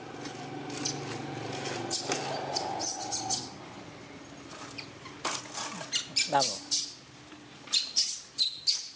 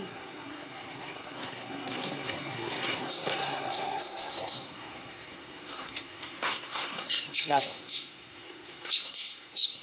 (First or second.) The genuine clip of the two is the first